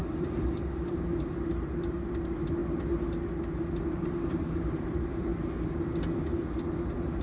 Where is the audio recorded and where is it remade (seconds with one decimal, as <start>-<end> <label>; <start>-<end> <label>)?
0.0-2.6 remade; 2.6-3.9 recorded; 3.9-5.3 remade; 5.3-7.2 recorded